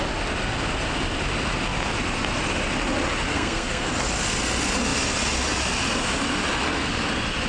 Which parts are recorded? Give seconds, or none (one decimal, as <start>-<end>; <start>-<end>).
0.0-3.3; 3.9-7.5